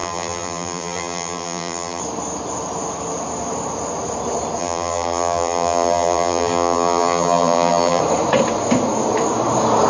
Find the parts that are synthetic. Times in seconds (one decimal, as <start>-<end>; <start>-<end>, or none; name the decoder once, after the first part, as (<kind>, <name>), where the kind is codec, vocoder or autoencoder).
0.0-2.0 (vocoder, BigVGAN v2); 4.6-8.0